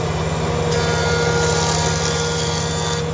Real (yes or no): yes